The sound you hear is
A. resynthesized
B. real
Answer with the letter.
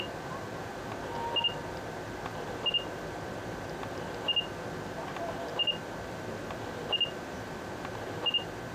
B